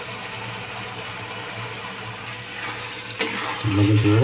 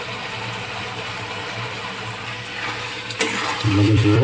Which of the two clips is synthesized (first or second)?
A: second